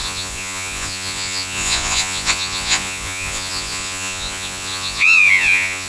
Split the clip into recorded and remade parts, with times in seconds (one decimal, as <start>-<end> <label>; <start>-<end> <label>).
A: 0.0-5.9 remade